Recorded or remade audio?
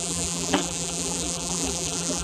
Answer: remade